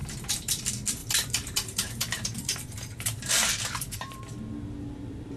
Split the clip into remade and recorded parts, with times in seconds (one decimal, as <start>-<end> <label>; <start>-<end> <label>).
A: 0.0-0.5 remade; 0.5-1.0 recorded; 1.0-4.2 remade; 4.2-5.4 recorded